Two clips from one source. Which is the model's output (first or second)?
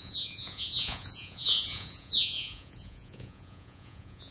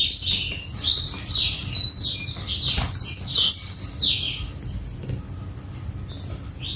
first